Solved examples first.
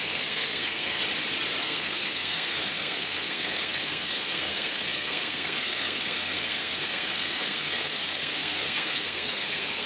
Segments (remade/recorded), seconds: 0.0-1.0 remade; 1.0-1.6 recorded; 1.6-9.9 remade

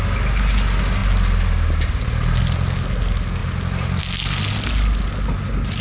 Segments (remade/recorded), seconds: 0.0-5.8 recorded

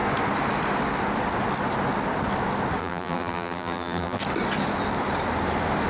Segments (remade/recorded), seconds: 0.0-2.8 recorded; 2.8-4.2 remade; 4.2-5.9 recorded

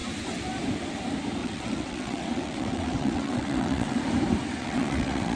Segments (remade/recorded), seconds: 0.0-1.4 recorded; 1.4-4.0 remade; 4.0-4.6 recorded; 4.6-5.4 remade